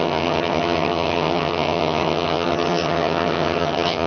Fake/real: fake